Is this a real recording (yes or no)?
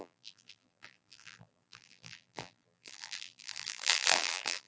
no